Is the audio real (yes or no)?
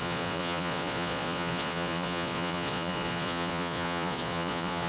no